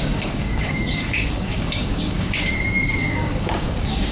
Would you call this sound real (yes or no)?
no